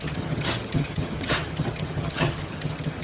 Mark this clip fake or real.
fake